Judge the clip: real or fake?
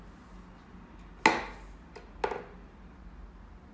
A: real